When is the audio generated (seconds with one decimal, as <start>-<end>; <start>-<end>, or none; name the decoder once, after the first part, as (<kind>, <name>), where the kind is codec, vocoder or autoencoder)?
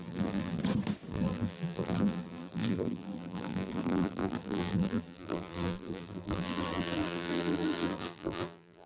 0.0-0.6 (vocoder, BigVGAN v2); 1.1-8.9